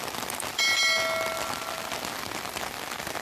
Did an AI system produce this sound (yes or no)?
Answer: no